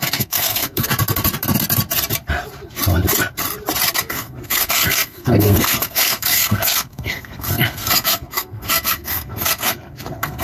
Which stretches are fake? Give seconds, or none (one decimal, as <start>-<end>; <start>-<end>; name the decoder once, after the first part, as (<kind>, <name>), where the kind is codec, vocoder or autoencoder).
0.0-0.9 (codec, SNAC); 4.0-10.4